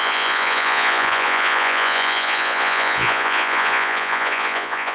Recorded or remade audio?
remade